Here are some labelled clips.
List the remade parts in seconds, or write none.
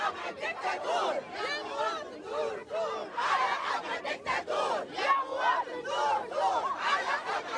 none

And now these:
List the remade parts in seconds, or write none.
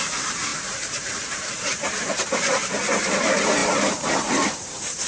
0.0-2.1 (vocoder, BigVGAN v2); 3.0-5.1